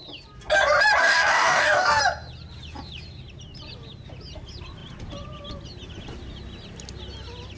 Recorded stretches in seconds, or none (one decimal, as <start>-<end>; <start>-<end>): 0.0-1.0; 2.0-7.6